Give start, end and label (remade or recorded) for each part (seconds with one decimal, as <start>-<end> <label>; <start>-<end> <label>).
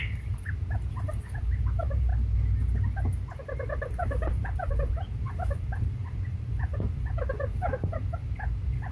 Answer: 0.0-2.1 remade; 2.1-3.7 recorded; 3.7-8.9 remade